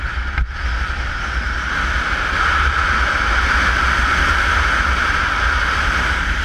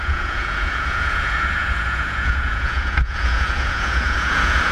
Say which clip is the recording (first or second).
first